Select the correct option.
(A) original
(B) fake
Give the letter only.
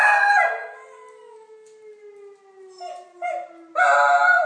A